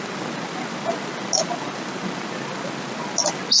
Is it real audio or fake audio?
real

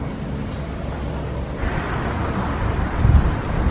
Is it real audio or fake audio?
real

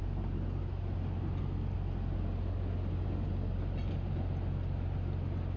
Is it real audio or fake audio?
real